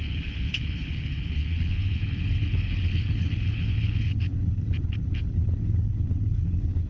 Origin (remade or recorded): remade